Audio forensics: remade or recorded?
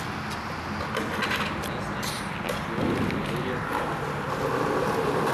recorded